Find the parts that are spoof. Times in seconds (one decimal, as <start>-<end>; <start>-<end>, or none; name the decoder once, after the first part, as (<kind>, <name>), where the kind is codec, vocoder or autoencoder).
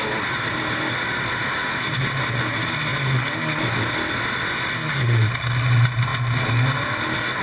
none